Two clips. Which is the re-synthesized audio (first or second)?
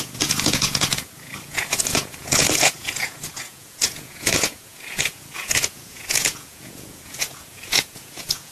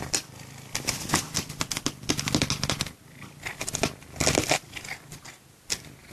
first